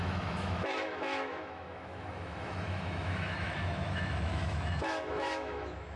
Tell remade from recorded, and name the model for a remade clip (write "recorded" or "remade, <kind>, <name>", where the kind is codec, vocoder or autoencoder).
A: remade, autoencoder, DAC-VAE